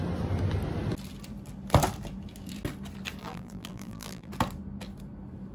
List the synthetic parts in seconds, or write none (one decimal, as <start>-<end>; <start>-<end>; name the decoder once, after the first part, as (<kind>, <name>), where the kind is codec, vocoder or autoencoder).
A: 3.2-4.3 (vocoder, BigVGAN v2)